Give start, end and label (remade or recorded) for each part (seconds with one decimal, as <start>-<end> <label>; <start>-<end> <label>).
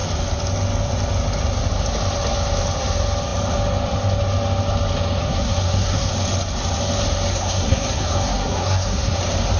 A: 0.0-5.2 recorded; 5.2-6.1 remade; 6.1-7.3 recorded; 7.3-9.2 remade; 9.2-9.6 recorded